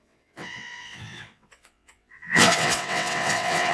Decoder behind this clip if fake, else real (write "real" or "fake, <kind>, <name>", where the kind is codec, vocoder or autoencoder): fake, vocoder, WaveNeXt